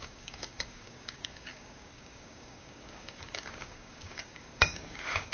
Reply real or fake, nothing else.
fake